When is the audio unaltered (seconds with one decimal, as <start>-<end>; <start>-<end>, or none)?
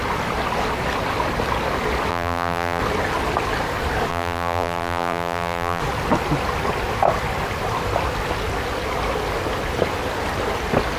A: 0.0-2.1; 2.8-4.1; 5.8-11.0